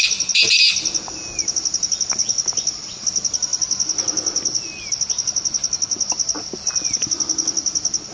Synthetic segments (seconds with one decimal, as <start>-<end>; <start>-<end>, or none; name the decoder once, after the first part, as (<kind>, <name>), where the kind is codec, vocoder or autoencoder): none